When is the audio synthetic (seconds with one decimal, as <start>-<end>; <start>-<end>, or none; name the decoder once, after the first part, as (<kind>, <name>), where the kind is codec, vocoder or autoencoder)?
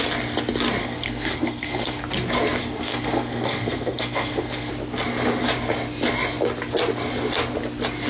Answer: 0.8-2.0 (codec, SNAC); 2.6-4.7